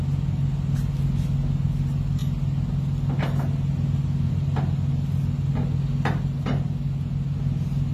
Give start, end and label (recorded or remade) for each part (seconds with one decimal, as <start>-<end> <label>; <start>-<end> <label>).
0.0-7.9 recorded